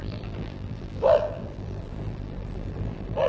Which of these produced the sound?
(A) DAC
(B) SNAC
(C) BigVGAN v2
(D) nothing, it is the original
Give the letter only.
C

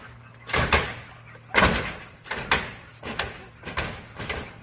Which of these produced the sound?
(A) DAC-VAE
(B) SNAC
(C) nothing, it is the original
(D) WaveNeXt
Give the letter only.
C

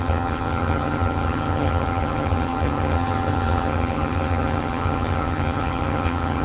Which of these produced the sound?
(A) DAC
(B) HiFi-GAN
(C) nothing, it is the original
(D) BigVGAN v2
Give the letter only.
B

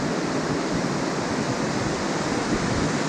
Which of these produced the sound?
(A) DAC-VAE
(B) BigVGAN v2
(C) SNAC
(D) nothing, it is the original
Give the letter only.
D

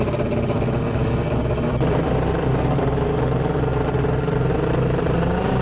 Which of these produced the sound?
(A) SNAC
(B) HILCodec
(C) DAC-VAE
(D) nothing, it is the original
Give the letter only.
D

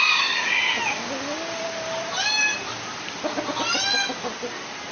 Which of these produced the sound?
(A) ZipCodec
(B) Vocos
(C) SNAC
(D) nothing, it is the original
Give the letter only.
D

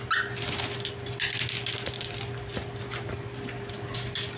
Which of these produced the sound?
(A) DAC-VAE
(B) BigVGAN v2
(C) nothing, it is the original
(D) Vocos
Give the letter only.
C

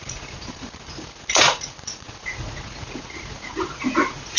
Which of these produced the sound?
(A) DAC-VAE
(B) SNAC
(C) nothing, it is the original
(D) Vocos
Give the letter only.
D